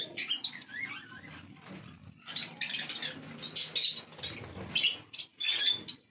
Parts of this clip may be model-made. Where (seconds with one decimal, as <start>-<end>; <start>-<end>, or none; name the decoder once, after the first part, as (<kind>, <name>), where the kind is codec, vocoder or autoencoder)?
none